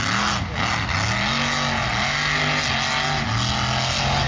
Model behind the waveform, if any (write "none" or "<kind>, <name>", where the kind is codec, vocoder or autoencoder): none